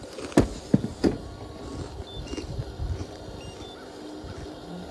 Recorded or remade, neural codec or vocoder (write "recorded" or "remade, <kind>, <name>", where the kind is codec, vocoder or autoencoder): recorded